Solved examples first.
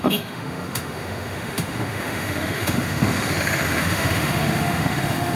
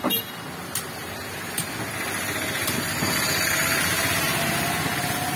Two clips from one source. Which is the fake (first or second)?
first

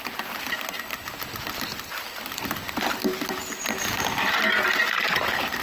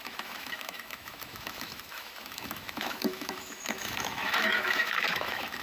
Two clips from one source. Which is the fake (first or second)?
second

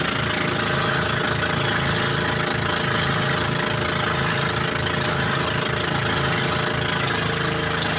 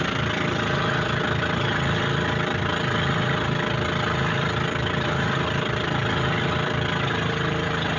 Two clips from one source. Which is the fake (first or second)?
second